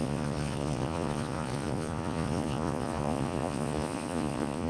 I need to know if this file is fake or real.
fake